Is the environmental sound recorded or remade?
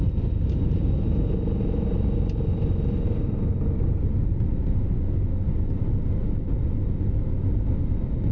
recorded